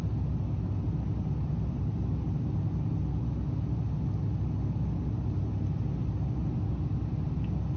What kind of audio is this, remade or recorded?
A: recorded